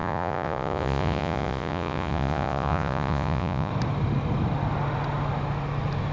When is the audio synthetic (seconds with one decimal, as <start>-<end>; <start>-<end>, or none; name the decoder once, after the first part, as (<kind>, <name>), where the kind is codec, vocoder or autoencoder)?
0.0-3.7 (vocoder, Vocos)